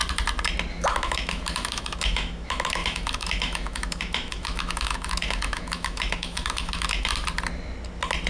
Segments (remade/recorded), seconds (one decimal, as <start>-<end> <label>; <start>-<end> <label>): 0.0-0.7 recorded; 0.7-7.1 remade; 7.1-8.3 recorded